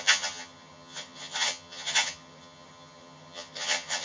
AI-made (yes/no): yes